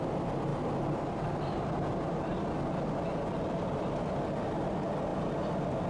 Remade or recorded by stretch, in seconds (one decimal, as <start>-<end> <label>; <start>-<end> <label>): 0.0-0.5 recorded; 0.5-4.0 remade; 4.0-5.9 recorded